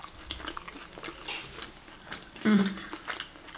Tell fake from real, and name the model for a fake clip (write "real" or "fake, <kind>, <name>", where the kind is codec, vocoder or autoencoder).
real